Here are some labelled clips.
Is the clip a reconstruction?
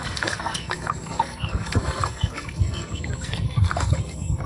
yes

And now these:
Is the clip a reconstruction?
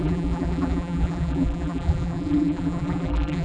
yes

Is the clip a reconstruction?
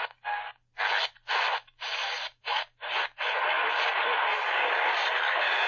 no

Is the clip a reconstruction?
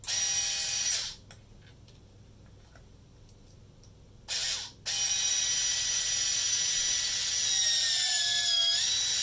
no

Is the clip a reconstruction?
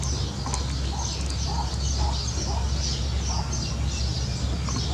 no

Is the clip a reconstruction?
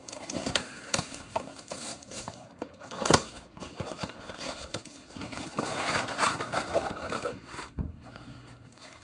yes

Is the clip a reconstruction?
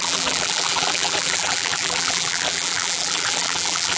yes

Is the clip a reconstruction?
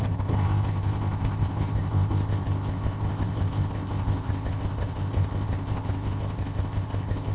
yes